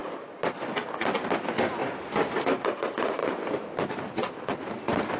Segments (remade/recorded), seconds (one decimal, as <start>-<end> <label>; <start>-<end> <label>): 0.0-5.2 recorded